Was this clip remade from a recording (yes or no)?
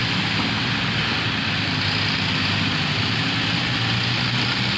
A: no